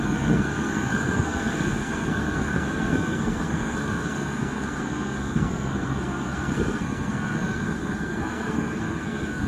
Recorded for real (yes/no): no